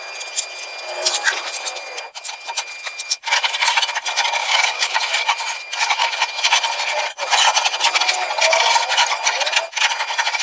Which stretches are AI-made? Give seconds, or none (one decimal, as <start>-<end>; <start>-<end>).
4.4-5.0